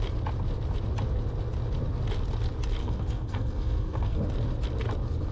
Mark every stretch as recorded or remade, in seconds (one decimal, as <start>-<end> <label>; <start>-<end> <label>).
0.0-2.8 recorded; 2.8-4.2 remade; 4.2-5.3 recorded